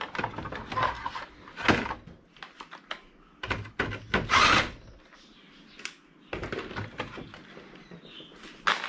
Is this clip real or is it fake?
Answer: real